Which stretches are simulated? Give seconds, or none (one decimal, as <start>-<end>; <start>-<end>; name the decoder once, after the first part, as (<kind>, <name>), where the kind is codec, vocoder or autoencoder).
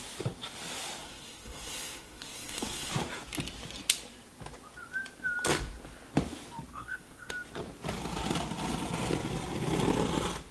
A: 1.0-2.9 (codec, SNAC); 6.7-7.3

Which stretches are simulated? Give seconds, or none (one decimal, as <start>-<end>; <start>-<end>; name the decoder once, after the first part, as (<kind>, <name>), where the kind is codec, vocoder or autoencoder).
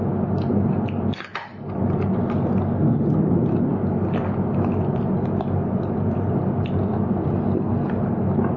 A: none